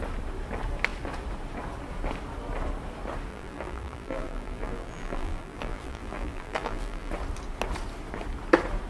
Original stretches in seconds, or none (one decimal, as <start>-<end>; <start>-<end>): 0.0-3.3; 7.1-8.9